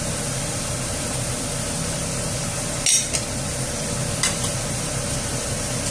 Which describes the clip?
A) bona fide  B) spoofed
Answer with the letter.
A